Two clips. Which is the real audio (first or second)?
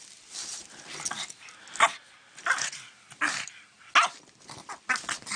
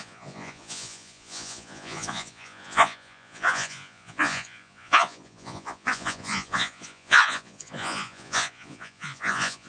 first